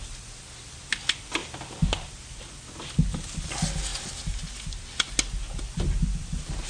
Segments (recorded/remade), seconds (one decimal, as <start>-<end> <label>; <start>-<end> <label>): 0.0-6.7 recorded